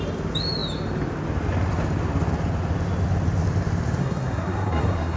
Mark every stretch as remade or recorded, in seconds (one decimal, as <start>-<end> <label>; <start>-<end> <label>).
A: 0.0-4.0 recorded; 4.0-5.2 remade